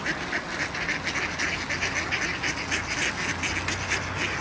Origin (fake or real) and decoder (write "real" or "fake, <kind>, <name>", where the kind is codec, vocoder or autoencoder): real